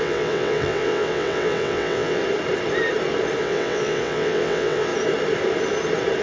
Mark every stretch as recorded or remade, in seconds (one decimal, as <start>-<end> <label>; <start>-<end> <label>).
0.0-2.2 remade; 2.2-3.4 recorded; 3.4-4.9 remade; 4.9-6.2 recorded